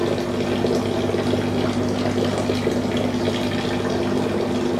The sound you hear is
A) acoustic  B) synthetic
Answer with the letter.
A